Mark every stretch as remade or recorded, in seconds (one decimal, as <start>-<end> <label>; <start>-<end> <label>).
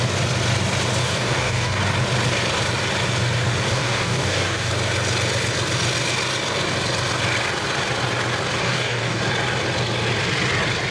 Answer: 0.0-1.0 recorded; 1.0-1.8 remade; 1.8-3.7 recorded; 3.7-4.7 remade; 4.7-8.6 recorded; 8.6-9.2 remade; 9.2-10.9 recorded